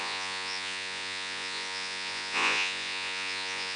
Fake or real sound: fake